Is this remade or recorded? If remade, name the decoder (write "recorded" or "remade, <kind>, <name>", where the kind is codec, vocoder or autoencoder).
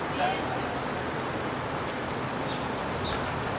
recorded